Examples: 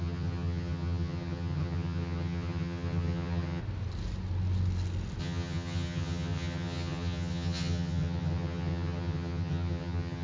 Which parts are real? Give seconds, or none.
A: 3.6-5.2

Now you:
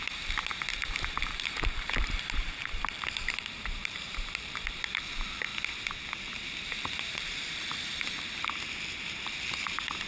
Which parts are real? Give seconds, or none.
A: 5.5-6.2

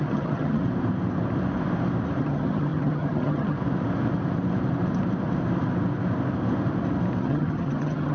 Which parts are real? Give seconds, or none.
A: 0.6-2.2; 3.6-7.2

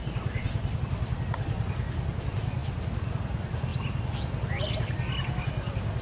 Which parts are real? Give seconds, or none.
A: 0.0-6.0

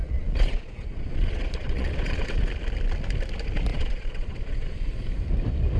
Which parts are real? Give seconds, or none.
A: 2.5-3.7; 5.0-5.8

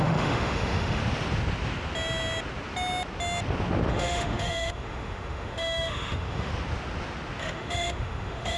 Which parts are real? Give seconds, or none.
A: 1.0-3.9; 6.5-7.4